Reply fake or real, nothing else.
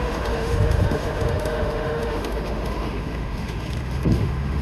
fake